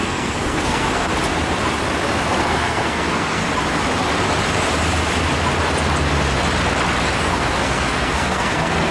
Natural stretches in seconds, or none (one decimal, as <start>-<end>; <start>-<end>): 1.1-2.4; 3.4-7.2